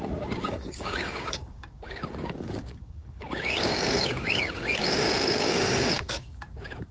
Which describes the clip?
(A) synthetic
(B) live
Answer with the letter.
A